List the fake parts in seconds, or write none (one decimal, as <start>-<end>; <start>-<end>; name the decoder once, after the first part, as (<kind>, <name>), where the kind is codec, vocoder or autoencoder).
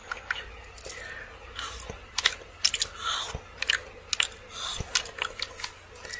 none